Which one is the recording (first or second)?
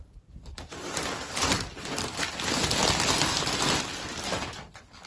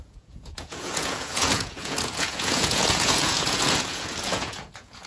first